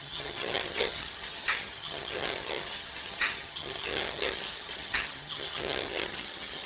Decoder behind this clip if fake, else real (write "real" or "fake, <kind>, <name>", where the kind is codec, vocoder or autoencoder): fake, vocoder, HiFi-GAN